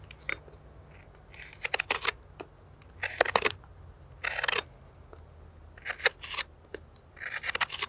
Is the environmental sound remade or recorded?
recorded